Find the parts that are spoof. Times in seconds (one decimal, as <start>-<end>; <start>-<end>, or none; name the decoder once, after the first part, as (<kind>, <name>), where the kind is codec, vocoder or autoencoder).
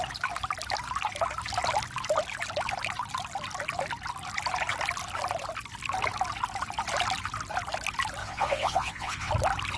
8.2-9.3 (vocoder, WaveNeXt)